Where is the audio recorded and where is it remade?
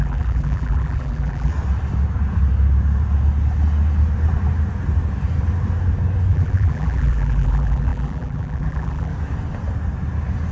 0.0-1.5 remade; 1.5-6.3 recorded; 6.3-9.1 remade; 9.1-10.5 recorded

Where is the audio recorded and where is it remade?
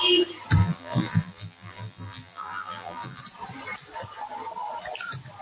0.0-0.6 recorded; 0.6-3.2 remade; 3.2-5.4 recorded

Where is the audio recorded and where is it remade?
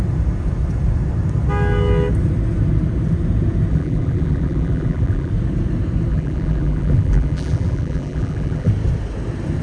0.0-3.7 recorded; 3.7-5.3 remade; 5.3-6.1 recorded; 6.1-8.7 remade; 8.7-9.6 recorded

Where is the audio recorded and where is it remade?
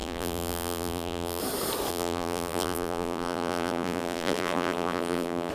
0.0-1.4 remade; 1.4-1.9 recorded; 1.9-5.5 remade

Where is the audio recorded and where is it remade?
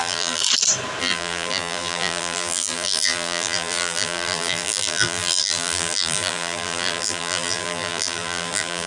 0.0-0.4 remade; 0.4-1.0 recorded; 1.0-8.9 remade